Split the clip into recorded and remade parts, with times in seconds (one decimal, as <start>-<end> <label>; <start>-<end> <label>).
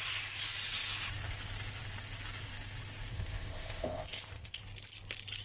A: 0.0-3.1 recorded; 3.1-4.6 remade; 4.6-5.4 recorded